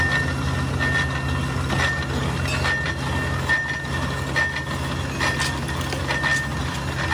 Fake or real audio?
real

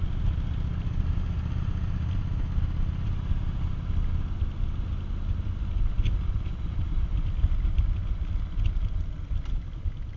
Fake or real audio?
real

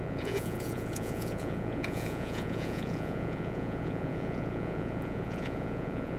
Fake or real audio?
fake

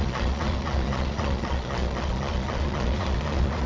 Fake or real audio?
fake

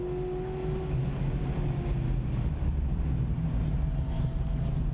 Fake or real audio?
real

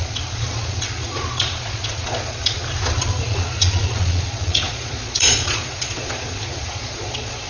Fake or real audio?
fake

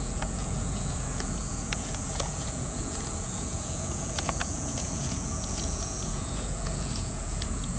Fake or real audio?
fake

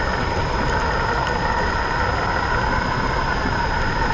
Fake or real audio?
real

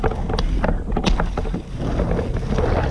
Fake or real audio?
real